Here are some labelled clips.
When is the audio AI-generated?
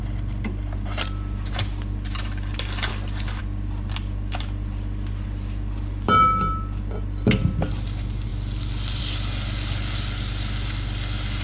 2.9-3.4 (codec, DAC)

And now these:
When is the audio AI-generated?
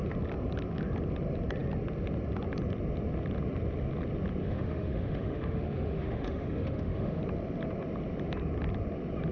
4.4-7.2 (autoencoder, DAC-VAE)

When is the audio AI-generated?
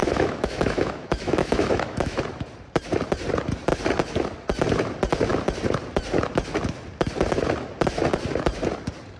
0.0-2.2 (autoencoder, DAC-VAE)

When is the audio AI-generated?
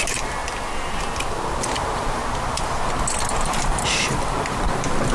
0.0-0.4 (vocoder, BigVGAN v2); 1.6-2.2; 3.4-5.1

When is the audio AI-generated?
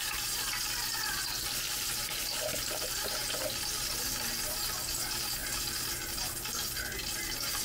none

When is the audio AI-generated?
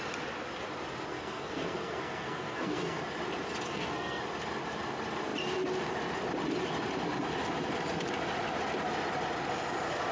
1.1-3.0 (codec, SNAC); 3.7-4.2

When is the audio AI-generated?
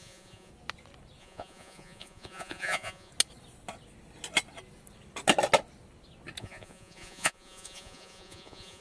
0.0-0.5 (vocoder, Vocos); 1.2-3.1; 6.4-8.8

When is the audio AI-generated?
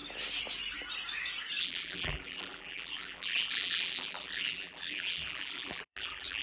1.6-6.4 (vocoder, BigVGAN v2)